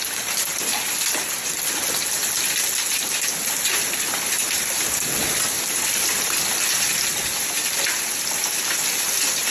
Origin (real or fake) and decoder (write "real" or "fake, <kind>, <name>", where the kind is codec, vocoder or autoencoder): real